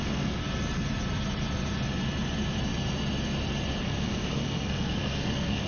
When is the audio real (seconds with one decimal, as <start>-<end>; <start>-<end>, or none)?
0.4-3.8